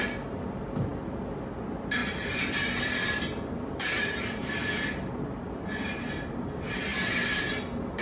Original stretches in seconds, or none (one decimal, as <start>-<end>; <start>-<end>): 4.6-6.4